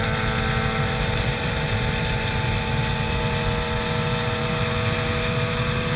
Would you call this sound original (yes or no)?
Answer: yes